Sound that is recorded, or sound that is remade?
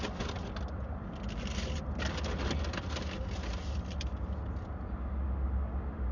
recorded